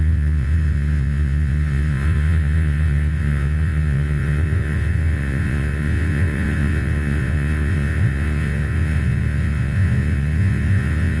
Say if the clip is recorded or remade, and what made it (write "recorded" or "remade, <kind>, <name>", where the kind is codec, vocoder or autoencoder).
remade, vocoder, Vocos